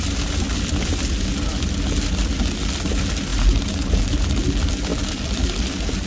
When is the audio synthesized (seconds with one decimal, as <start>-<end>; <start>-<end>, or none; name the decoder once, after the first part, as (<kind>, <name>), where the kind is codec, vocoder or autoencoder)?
none